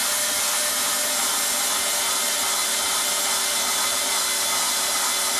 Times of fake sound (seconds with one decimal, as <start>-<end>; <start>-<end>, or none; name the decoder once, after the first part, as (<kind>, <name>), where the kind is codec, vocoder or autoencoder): none